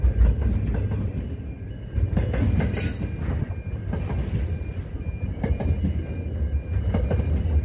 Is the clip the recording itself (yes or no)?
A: yes